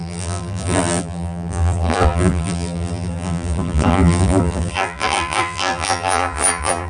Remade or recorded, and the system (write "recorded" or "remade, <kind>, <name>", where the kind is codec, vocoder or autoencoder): remade, vocoder, BigVGAN v2